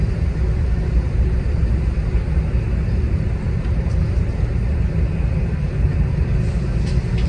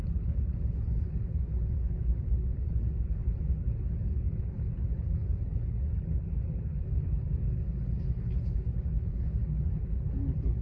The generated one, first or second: second